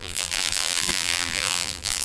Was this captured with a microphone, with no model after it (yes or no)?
no